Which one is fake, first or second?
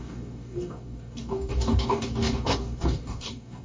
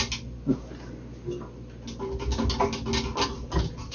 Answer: first